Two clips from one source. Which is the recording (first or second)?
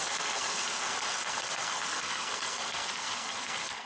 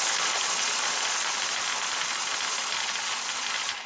second